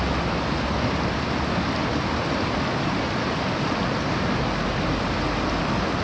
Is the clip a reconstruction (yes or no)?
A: no